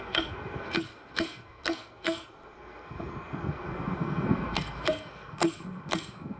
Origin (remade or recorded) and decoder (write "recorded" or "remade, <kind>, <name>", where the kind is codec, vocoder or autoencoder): remade, codec, SNAC